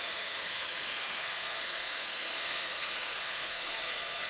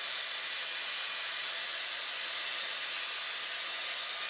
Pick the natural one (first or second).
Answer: second